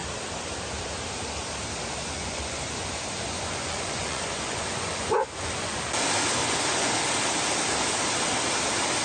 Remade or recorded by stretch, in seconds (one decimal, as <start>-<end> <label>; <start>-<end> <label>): 0.0-2.0 recorded; 2.0-5.8 remade; 5.8-6.4 recorded; 6.4-6.9 remade; 6.9-9.0 recorded